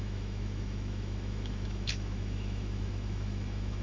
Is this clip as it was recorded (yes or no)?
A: no